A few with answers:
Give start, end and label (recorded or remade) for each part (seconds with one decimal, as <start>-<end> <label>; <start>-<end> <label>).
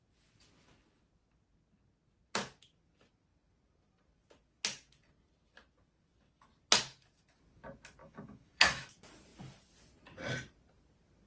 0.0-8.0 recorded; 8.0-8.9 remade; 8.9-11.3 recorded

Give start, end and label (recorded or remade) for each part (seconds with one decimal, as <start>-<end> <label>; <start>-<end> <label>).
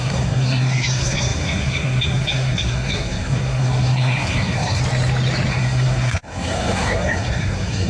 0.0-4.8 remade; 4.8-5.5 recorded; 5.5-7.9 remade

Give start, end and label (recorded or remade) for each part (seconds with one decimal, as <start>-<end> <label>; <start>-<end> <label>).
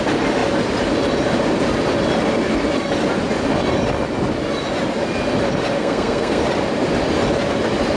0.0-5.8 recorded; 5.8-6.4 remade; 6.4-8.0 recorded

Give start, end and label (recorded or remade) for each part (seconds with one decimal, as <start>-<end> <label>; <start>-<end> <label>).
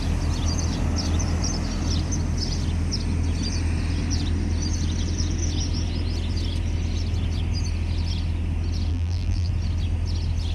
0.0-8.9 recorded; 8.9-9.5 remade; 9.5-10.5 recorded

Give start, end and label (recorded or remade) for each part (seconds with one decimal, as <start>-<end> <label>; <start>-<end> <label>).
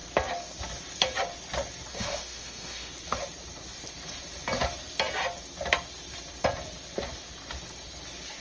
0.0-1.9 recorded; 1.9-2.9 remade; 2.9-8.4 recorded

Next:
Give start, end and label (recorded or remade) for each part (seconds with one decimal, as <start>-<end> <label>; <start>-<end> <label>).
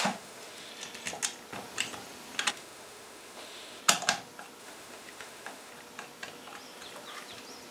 0.0-0.7 remade; 0.7-2.5 recorded; 2.5-3.8 remade; 3.8-4.6 recorded; 4.6-5.7 remade; 5.7-7.7 recorded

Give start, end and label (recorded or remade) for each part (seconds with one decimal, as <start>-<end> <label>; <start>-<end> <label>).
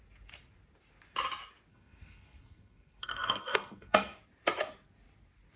0.0-1.7 recorded; 1.7-4.2 remade; 4.2-5.6 recorded